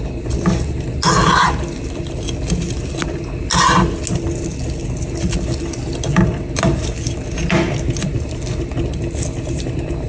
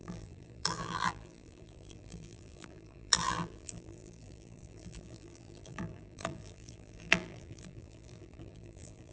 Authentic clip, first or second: first